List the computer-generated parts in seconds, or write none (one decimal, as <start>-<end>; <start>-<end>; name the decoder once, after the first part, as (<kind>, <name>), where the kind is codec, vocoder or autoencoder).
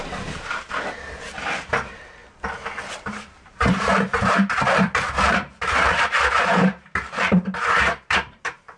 0.0-2.2 (vocoder, BigVGAN v2); 2.9-8.8